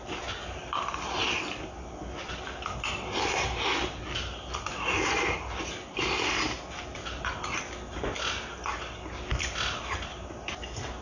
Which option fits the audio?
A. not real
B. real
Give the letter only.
B